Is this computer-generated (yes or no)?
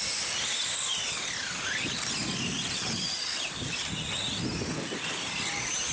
no